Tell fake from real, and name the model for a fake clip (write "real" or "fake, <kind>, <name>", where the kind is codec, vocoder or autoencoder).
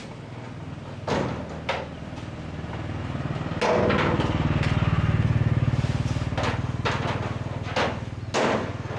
real